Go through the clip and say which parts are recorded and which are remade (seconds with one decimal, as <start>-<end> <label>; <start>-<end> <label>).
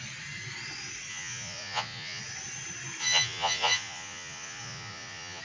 0.0-1.1 recorded; 1.1-2.2 remade; 2.2-3.0 recorded; 3.0-5.4 remade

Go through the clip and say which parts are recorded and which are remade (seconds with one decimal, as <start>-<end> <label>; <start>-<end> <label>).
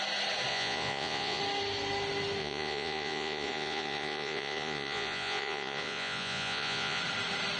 0.0-0.5 recorded; 0.5-1.4 remade; 1.4-2.4 recorded; 2.4-7.0 remade; 7.0-7.6 recorded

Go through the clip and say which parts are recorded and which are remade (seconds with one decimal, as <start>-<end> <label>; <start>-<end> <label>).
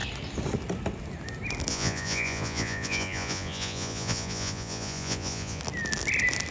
0.0-1.7 recorded; 1.7-5.6 remade; 5.6-6.5 recorded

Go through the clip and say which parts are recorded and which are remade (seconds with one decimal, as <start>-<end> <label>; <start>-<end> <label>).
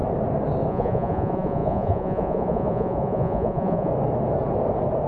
0.0-0.7 recorded; 0.7-3.9 remade; 3.9-5.1 recorded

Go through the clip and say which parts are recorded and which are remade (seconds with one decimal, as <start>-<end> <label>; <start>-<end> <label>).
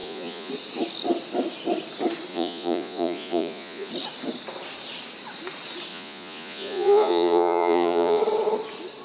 0.0-0.5 remade; 0.5-2.3 recorded; 2.3-3.9 remade; 3.9-5.9 recorded; 5.9-8.2 remade; 8.2-9.0 recorded